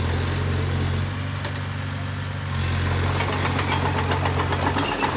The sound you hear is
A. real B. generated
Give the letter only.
A